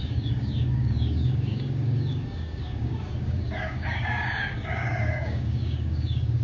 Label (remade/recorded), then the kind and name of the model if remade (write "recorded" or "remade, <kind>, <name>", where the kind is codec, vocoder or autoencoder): remade, codec, DAC